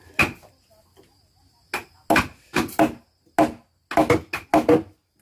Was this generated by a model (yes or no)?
no